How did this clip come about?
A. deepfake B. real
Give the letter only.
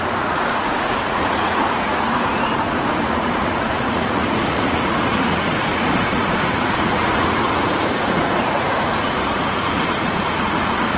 A